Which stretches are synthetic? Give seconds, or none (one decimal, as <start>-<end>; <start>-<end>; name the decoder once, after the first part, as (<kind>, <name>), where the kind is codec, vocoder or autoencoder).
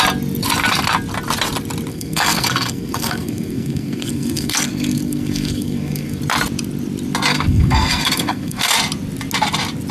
1.9-6.2 (codec, SNAC); 7.3-8.7